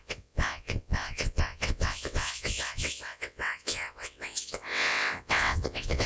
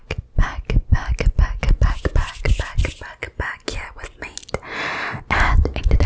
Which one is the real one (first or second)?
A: second